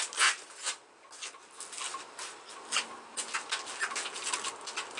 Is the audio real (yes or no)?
yes